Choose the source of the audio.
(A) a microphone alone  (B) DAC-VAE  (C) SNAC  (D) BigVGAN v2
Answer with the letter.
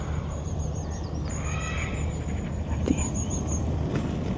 A